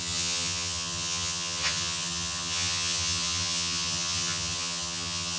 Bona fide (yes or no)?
no